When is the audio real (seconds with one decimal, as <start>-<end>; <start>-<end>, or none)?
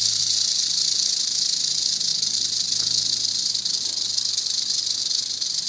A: 0.0-5.7